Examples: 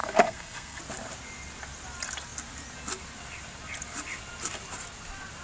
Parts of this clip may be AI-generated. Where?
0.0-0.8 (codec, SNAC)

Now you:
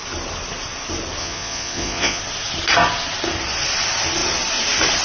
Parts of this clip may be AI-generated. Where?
1.2-2.2 (vocoder, Vocos)

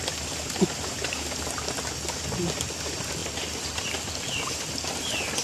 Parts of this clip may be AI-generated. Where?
none

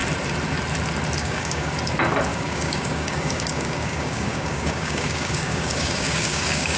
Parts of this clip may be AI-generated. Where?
1.2-1.7 (codec, DAC); 2.3-6.8

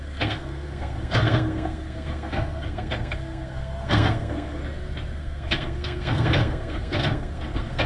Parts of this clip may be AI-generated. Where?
0.0-4.6 (codec, SNAC); 5.2-7.9

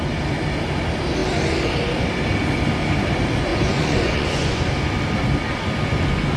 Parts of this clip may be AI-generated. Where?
3.5-4.6 (vocoder, Vocos)

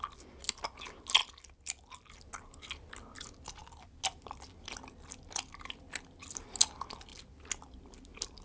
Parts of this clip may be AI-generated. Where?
none